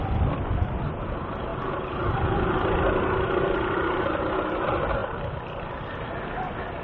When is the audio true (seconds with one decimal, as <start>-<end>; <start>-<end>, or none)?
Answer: 0.0-6.8